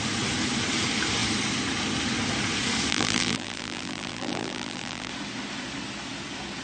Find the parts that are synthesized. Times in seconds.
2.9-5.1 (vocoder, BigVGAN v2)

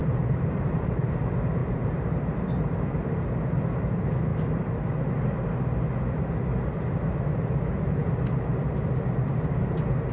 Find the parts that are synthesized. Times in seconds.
0.0-0.9 (vocoder, BigVGAN v2); 1.6-2.3

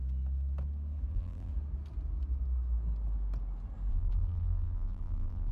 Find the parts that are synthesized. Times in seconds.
1.1-1.5 (vocoder, BigVGAN v2); 3.9-5.5

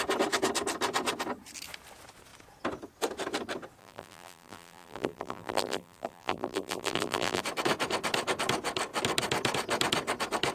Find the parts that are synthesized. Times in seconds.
3.8-7.4 (vocoder, BigVGAN v2)

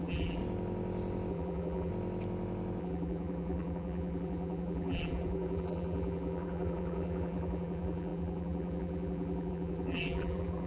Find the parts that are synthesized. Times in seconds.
0.0-0.4 (vocoder, BigVGAN v2); 1.3-1.9; 2.8-10.7

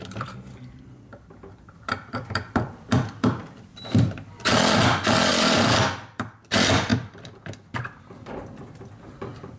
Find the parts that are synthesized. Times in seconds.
0.0-4.5 (vocoder, BigVGAN v2); 5.3-9.6

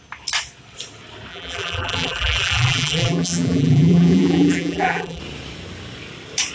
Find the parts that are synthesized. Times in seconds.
1.3-5.2 (vocoder, BigVGAN v2)

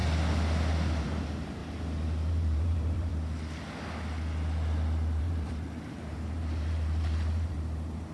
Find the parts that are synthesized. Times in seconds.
1.0-1.6 (vocoder, BigVGAN v2); 2.3-3.1; 5.2-8.1